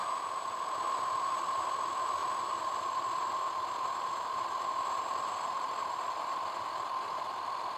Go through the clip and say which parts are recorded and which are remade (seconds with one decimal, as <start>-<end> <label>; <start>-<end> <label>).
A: 0.0-2.2 remade; 2.2-5.4 recorded; 5.4-7.8 remade